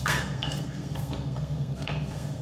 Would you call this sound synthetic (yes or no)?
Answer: yes